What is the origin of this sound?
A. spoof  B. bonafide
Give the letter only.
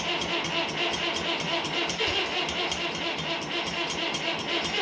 B